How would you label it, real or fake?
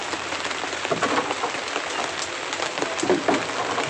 real